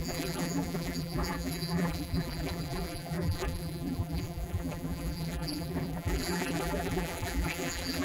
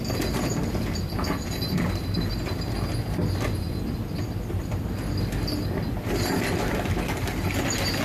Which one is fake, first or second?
first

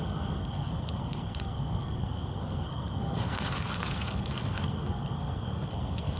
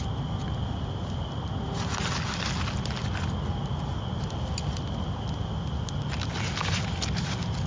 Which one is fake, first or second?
first